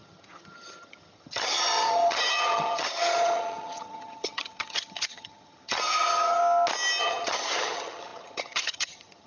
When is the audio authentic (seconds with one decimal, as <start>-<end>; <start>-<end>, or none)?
6.4-7.0